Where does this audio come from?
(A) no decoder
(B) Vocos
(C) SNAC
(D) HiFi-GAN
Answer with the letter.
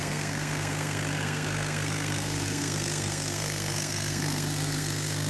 C